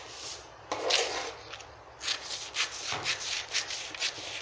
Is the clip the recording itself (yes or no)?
yes